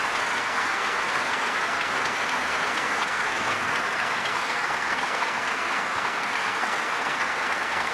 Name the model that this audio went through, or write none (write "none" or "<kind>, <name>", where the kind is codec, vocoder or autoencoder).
codec, SNAC